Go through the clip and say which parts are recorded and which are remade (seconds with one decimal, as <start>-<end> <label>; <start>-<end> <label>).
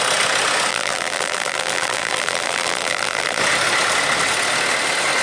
0.0-0.7 recorded; 0.7-3.4 remade; 3.4-5.2 recorded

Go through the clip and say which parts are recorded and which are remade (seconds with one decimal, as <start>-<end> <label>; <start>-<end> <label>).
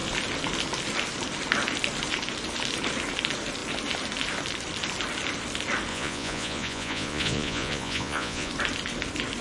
0.0-5.9 recorded; 5.9-8.5 remade; 8.5-9.4 recorded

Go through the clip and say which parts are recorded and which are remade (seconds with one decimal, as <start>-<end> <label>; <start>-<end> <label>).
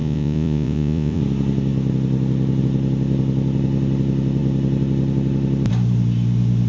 0.0-1.2 remade; 1.2-6.7 recorded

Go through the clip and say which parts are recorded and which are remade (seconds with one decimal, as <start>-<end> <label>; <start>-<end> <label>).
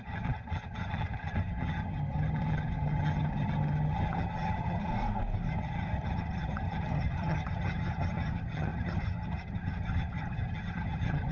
0.0-4.9 remade; 4.9-5.5 recorded; 5.5-11.3 remade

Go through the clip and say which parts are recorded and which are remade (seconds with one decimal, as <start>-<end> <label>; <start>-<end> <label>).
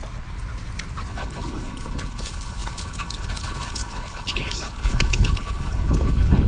0.0-1.1 recorded; 1.1-6.5 remade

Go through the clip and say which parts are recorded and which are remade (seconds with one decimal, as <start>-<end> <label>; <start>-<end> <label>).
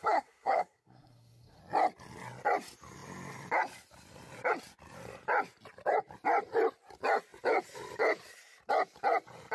0.0-1.6 remade; 1.6-9.5 recorded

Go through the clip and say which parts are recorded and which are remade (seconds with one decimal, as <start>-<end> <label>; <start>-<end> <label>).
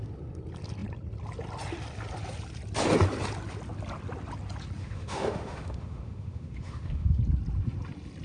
0.0-4.8 recorded; 4.8-7.2 remade; 7.2-8.2 recorded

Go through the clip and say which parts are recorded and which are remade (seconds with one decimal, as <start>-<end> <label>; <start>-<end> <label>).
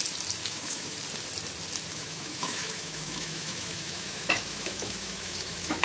0.0-0.4 recorded; 0.4-0.9 remade; 0.9-1.9 recorded; 1.9-5.8 remade